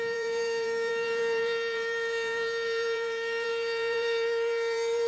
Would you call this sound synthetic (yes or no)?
yes